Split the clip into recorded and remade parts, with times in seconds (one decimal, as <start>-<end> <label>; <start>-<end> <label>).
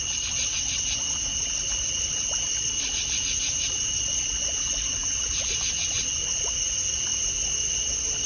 0.0-8.3 recorded